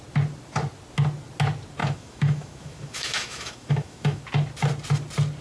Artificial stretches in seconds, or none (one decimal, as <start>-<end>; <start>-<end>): 1.8-4.2